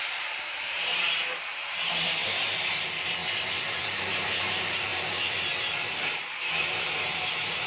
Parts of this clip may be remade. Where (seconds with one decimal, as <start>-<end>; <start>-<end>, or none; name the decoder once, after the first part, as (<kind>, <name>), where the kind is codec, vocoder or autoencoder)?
0.0-3.2 (vocoder, BigVGAN v2); 3.8-4.9; 5.6-7.7